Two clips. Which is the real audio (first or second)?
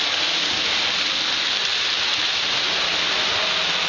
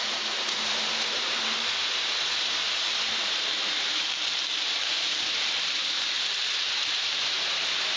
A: first